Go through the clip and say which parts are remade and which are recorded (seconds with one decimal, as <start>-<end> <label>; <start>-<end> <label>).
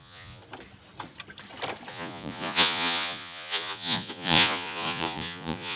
0.0-0.4 remade; 0.4-1.9 recorded; 1.9-5.8 remade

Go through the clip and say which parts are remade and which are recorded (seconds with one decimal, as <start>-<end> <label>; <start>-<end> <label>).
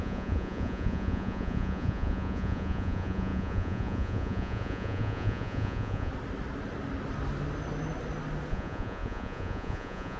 0.0-6.1 remade; 6.1-8.5 recorded; 8.5-10.2 remade